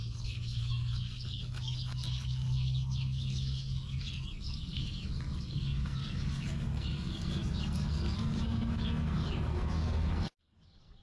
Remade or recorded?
remade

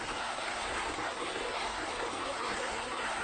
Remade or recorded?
remade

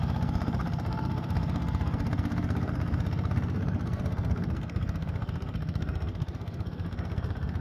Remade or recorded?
remade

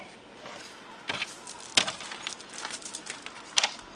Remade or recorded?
recorded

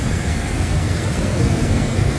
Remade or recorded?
remade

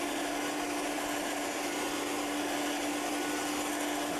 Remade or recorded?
recorded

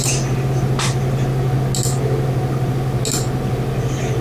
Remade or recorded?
recorded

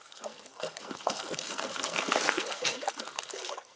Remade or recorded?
remade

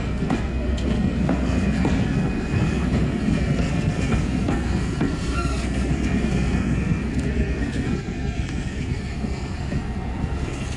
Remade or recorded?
remade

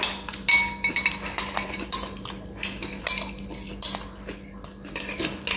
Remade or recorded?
recorded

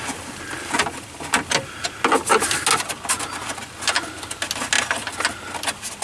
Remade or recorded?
recorded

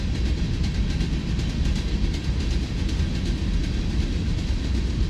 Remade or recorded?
recorded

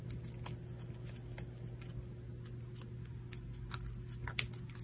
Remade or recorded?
recorded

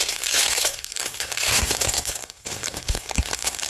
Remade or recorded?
remade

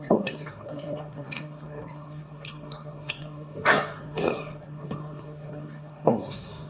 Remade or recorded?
remade